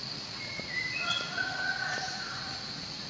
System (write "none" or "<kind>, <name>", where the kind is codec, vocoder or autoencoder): vocoder, Vocos